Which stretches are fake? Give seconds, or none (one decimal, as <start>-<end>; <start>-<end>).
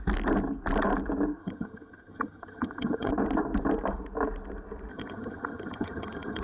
1.4-3.1; 4.9-6.4